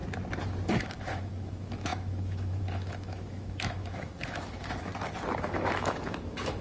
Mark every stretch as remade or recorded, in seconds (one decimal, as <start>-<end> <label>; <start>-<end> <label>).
0.0-0.7 recorded; 0.7-4.9 remade; 4.9-5.4 recorded; 5.4-6.6 remade